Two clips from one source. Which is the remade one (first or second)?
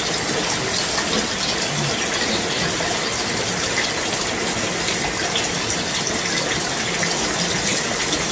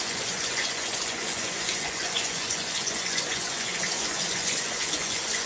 second